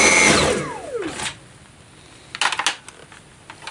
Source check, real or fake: real